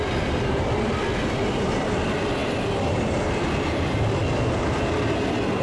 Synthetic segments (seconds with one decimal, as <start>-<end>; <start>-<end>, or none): none